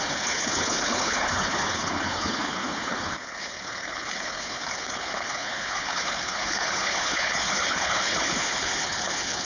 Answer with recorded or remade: remade